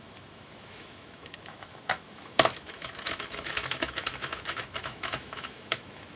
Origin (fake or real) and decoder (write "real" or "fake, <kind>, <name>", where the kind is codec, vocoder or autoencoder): fake, autoencoder, DAC-VAE